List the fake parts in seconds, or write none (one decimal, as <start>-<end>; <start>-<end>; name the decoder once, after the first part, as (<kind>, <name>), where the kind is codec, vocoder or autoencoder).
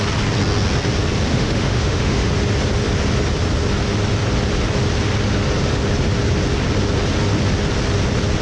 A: 1.3-2.3 (autoencoder, DAC-VAE)